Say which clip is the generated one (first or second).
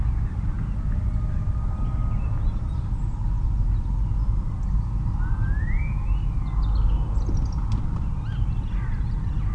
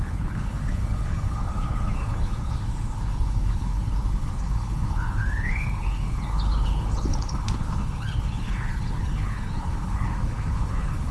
second